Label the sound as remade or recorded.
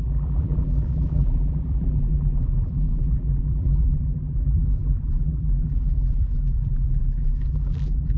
remade